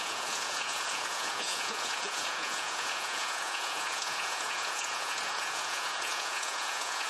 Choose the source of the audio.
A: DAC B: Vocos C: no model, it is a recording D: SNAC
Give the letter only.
B